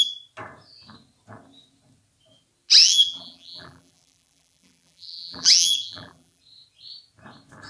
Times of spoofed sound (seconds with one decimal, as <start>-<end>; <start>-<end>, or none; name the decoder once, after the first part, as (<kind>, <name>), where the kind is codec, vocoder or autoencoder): 2.8-6.4 (vocoder, BigVGAN v2)